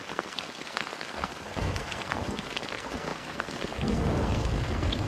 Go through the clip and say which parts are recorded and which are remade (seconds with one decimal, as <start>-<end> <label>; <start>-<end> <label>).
0.0-5.1 remade